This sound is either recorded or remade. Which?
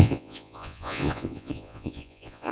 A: remade